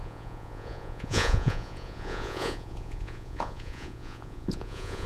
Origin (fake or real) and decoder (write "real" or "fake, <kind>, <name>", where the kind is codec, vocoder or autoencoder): fake, vocoder, Vocos